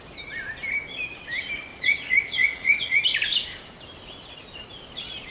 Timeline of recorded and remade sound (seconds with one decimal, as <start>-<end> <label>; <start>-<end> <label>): 0.0-1.7 recorded; 1.7-3.0 remade; 3.0-5.3 recorded